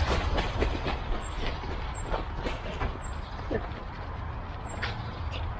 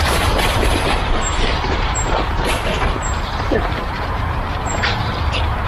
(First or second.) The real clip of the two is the first